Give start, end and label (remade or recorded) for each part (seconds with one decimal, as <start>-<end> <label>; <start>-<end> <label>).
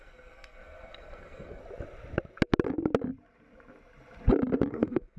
0.0-1.6 remade; 1.6-4.7 recorded; 4.7-5.2 remade